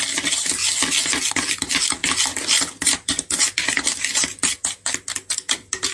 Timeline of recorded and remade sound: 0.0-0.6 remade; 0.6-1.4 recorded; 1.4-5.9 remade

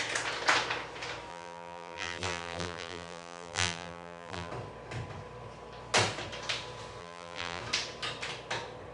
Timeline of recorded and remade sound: 0.0-1.3 recorded; 1.3-4.5 remade; 4.5-7.0 recorded; 7.0-7.6 remade; 7.6-8.9 recorded

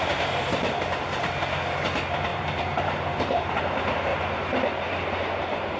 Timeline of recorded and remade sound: 0.0-2.3 recorded; 2.3-3.5 remade; 3.5-4.1 recorded; 4.1-5.8 remade

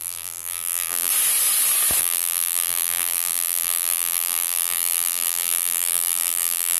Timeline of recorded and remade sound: 0.0-1.1 remade; 1.1-2.0 recorded; 2.0-6.8 remade

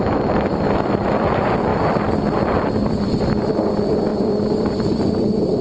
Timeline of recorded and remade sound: 0.0-1.7 remade; 1.7-3.5 recorded; 3.5-5.6 remade

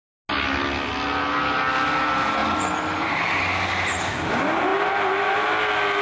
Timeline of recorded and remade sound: 0.0-6.0 recorded